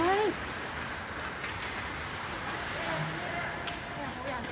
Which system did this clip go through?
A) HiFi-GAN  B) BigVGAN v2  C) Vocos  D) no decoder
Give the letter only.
D